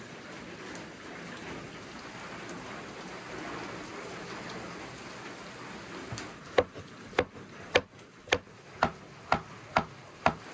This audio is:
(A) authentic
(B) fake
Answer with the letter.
A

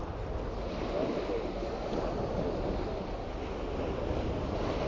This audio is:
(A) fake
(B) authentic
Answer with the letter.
B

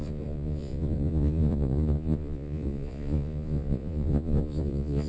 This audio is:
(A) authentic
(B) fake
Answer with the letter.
B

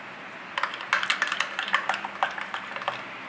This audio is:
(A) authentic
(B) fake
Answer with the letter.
A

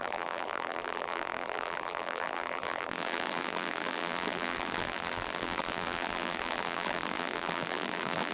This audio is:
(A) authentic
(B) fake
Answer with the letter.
B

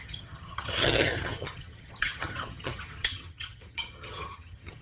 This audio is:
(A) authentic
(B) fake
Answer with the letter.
B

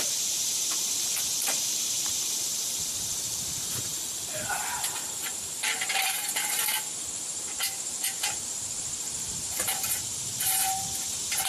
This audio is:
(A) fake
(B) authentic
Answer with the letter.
A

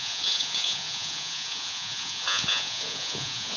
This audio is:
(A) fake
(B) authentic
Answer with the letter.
A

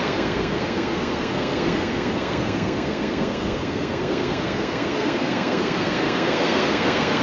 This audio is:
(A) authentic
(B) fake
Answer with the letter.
B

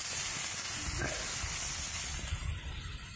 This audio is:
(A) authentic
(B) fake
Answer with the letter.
A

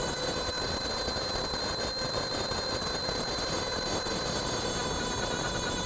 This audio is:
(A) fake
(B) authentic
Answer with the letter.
B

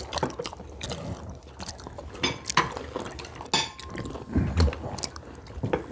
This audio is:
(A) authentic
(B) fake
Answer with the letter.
A